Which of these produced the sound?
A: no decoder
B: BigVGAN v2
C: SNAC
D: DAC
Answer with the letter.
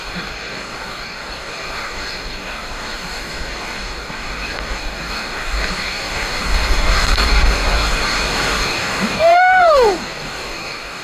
D